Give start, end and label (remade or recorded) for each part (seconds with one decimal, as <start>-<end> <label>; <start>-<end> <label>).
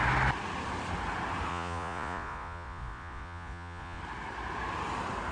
0.0-1.5 recorded; 1.5-4.0 remade; 4.0-5.3 recorded